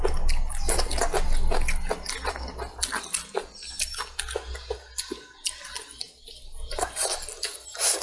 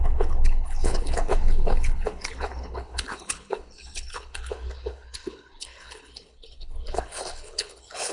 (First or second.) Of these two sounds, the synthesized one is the second